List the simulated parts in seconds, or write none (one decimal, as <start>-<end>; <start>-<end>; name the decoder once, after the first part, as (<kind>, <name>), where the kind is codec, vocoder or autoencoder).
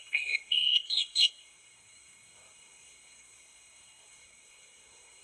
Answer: 0.0-5.2 (codec, SNAC)